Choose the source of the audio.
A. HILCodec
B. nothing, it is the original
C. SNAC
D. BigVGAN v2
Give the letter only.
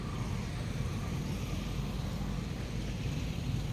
B